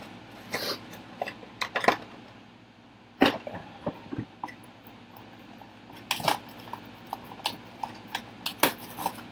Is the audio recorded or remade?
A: recorded